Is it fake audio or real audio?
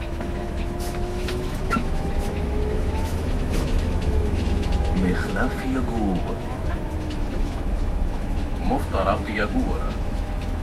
fake